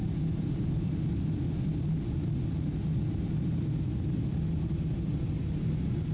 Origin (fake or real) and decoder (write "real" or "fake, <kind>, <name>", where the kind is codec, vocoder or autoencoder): real